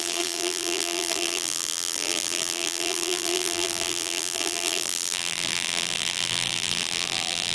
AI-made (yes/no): yes